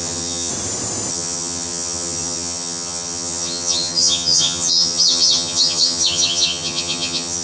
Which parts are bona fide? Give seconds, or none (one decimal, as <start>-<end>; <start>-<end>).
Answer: 0.5-1.1